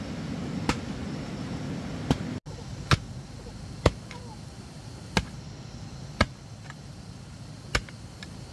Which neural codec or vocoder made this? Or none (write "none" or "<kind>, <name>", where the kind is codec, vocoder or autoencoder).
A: none